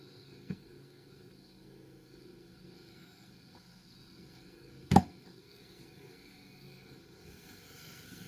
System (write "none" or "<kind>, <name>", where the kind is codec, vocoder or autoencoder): codec, SNAC